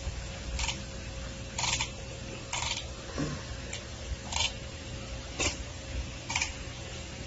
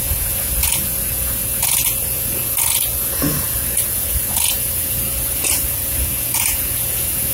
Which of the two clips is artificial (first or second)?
second